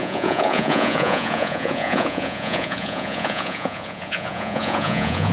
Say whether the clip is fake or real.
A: fake